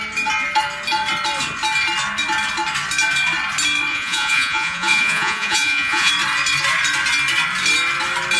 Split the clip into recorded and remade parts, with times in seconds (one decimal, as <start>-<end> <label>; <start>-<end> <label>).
0.0-3.9 recorded; 3.9-6.1 remade; 6.1-8.4 recorded